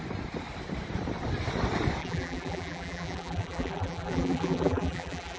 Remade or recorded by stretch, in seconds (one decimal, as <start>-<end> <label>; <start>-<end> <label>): 0.0-2.0 recorded; 2.0-5.4 remade